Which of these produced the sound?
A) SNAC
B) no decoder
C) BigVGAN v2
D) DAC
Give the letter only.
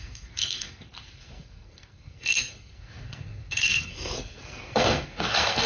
A